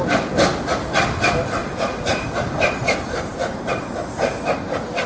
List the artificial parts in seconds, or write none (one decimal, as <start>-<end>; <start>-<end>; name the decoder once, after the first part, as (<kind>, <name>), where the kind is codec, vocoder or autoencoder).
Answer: 1.6-4.6 (vocoder, BigVGAN v2)